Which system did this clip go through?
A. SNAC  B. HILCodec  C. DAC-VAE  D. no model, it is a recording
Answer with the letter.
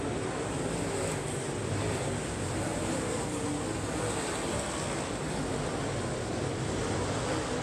D